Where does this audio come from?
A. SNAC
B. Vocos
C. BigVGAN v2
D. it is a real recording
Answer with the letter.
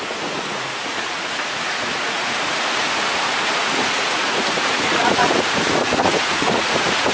B